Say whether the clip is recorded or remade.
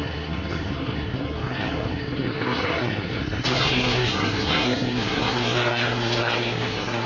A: remade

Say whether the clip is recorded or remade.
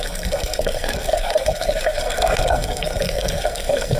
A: remade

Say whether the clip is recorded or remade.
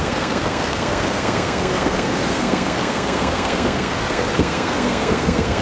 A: remade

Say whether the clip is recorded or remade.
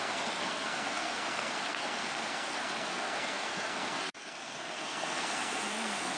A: remade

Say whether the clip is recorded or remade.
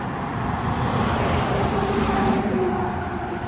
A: recorded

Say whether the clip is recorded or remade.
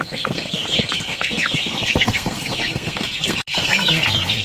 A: remade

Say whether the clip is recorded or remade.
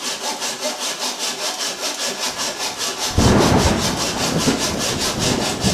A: recorded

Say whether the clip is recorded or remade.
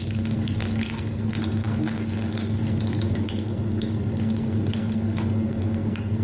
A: remade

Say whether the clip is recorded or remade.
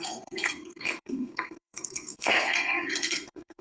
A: remade